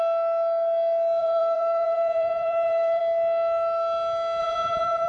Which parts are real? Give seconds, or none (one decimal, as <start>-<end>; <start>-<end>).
0.0-1.2; 3.0-4.4